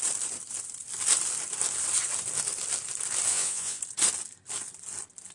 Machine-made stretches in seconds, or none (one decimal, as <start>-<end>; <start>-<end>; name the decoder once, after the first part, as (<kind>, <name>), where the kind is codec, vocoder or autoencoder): 3.3-3.8 (vocoder, Vocos)

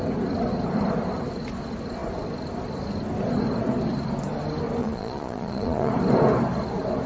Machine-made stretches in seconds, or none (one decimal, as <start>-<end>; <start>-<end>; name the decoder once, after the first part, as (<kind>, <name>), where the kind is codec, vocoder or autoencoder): 4.8-5.9 (vocoder, Vocos)

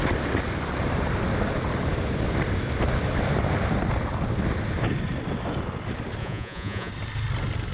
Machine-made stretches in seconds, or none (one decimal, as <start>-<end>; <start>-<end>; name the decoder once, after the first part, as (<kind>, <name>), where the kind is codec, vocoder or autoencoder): 6.2-6.9 (vocoder, Vocos)

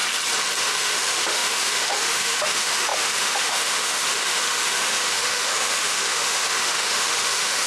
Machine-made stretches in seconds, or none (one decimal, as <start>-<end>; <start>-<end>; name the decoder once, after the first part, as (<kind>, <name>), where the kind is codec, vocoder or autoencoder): 0.6-7.7 (autoencoder, DAC-VAE)

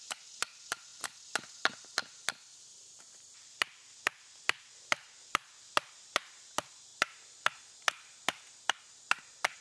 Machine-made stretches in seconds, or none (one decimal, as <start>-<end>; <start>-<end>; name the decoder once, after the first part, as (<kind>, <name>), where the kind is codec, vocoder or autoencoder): none

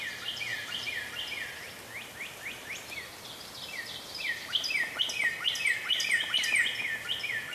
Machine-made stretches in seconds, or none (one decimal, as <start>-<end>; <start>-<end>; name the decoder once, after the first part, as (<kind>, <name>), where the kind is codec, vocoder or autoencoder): none